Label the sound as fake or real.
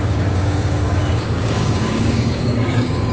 fake